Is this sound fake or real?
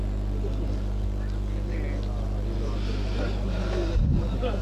real